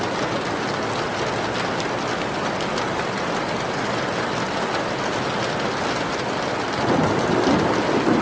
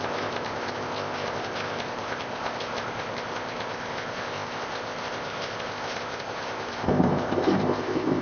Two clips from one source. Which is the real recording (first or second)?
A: first